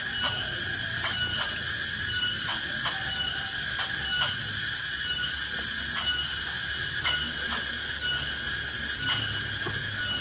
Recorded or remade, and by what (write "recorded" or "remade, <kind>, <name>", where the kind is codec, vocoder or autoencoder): recorded